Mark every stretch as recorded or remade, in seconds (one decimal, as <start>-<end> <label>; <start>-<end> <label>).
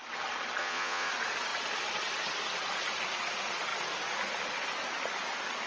0.0-0.6 recorded; 0.6-1.1 remade; 1.1-5.7 recorded